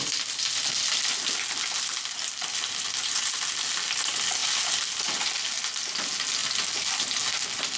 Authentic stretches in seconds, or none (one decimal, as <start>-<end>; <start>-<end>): 0.0-7.8